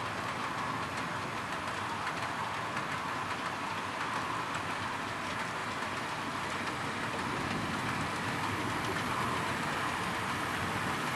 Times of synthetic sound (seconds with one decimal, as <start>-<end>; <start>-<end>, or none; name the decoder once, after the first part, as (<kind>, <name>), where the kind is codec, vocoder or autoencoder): none